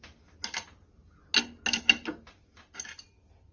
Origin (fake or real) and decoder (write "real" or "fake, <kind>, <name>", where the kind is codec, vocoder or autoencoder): real